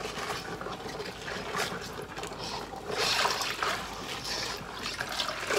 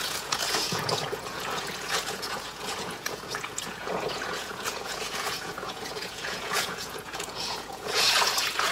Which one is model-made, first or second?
second